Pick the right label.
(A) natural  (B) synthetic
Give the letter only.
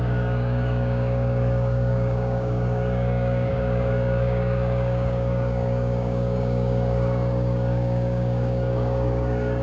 B